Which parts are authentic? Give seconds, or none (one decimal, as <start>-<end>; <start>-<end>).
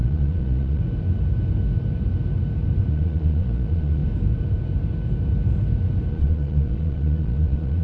0.8-2.9; 4.0-6.1